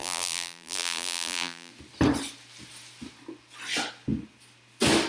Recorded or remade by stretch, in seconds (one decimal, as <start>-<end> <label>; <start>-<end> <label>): 0.0-1.7 remade; 1.7-5.1 recorded